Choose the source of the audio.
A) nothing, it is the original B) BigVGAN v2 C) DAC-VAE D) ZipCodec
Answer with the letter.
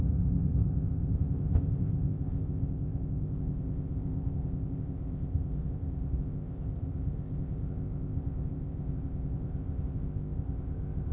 D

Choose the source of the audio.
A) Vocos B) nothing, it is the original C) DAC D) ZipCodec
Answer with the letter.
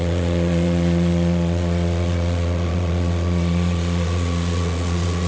A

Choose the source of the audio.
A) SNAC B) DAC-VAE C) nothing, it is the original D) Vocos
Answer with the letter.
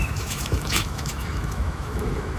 B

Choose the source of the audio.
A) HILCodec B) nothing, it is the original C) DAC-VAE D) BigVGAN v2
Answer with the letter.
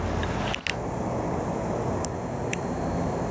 B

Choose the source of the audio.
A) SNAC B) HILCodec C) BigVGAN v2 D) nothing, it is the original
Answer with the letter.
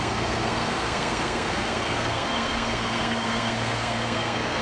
A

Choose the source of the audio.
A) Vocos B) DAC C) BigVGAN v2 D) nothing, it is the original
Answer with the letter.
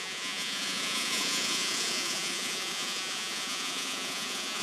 A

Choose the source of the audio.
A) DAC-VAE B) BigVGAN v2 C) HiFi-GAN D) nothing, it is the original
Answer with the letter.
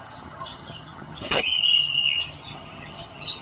C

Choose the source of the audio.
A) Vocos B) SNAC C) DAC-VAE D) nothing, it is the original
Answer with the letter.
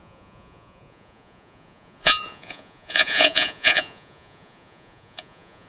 A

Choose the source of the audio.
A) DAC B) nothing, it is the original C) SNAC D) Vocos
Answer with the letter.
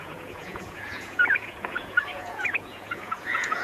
D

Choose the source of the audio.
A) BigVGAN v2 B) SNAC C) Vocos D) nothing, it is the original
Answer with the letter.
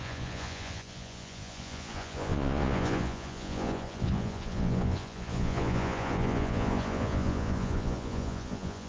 C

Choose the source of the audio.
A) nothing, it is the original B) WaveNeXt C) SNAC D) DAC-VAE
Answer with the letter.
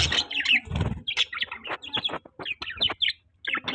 A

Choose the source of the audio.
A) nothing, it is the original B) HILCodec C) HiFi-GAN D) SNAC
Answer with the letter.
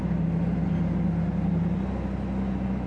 A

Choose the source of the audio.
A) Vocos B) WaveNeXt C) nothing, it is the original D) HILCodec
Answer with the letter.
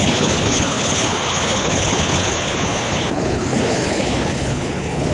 D